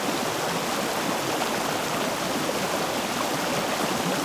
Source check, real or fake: real